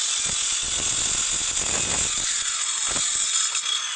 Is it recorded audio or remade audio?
recorded